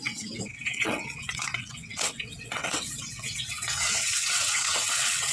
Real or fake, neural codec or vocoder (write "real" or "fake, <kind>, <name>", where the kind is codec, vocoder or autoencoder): fake, vocoder, WaveNeXt